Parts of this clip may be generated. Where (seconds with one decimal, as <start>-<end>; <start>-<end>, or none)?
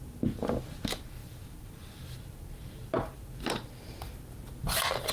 none